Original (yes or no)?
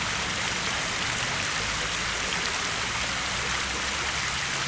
yes